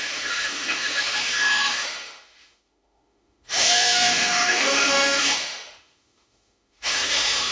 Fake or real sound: fake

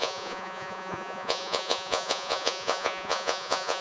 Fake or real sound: fake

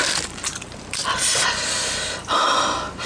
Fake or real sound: real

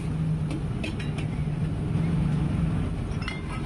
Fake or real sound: real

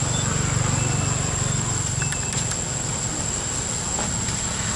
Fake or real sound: real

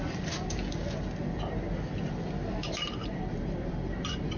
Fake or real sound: real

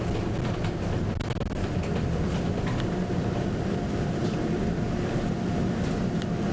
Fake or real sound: real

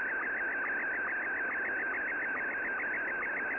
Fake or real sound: fake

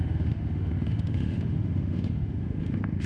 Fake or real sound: fake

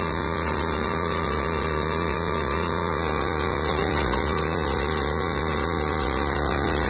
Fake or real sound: fake